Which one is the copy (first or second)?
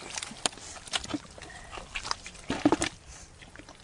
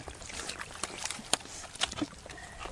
first